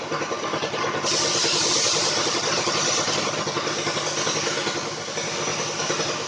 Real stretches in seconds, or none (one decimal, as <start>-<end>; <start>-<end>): 0.0-1.5; 3.2-5.5